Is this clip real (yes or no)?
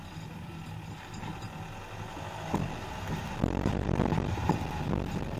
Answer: yes